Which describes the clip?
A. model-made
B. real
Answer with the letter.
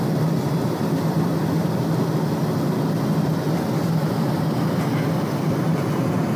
B